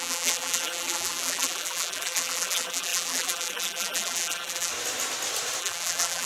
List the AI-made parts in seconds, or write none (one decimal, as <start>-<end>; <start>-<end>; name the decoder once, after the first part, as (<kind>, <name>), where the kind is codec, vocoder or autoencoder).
0.0-4.7 (vocoder, BigVGAN v2); 5.6-6.3